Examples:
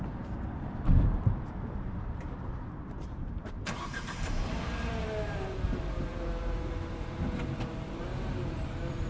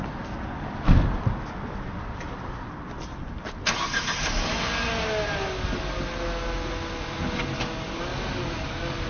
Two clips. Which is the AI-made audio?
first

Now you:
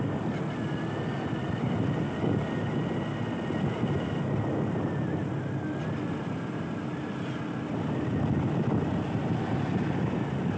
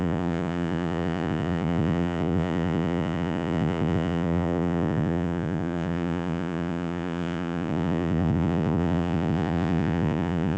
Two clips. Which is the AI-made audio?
second